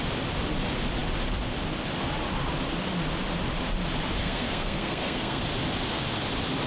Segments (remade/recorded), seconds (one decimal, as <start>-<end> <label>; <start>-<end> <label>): 0.0-4.2 recorded; 4.2-5.4 remade; 5.4-6.7 recorded